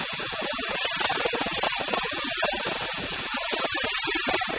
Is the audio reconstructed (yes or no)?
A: no